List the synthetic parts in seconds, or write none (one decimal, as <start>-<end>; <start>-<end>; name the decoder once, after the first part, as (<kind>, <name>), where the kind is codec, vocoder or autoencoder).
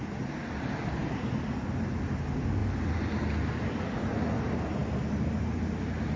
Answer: none